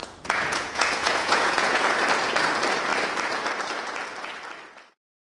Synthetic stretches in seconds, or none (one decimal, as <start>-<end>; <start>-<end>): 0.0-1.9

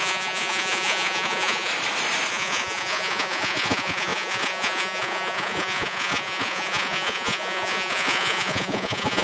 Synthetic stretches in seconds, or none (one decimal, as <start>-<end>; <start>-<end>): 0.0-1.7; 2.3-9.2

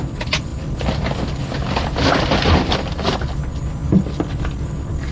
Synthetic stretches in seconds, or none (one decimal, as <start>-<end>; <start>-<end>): none

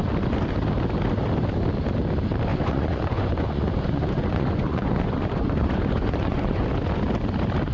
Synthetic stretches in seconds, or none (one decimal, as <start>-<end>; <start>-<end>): 2.5-6.7

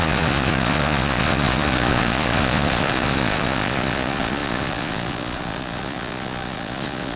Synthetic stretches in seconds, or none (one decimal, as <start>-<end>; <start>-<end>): 0.0-7.2

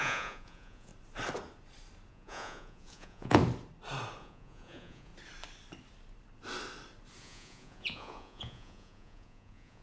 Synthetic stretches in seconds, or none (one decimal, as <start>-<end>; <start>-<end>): 0.0-0.9; 2.1-3.4; 4.2-5.1; 7.2-9.8

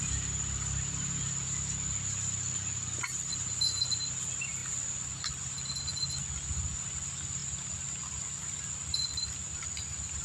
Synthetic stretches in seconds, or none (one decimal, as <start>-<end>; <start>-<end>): none